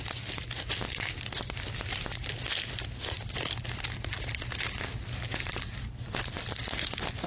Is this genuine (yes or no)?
yes